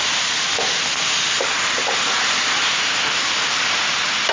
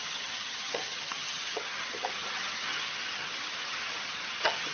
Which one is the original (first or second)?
first